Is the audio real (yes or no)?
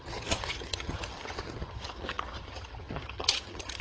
no